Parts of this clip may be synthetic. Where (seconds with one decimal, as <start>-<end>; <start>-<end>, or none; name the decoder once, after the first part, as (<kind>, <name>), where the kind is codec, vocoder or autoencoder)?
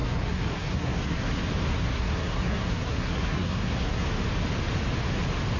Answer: 0.0-1.4 (codec, SNAC); 1.9-4.0